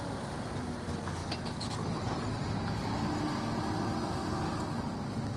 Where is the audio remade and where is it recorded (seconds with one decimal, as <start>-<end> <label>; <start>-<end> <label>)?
0.0-5.4 recorded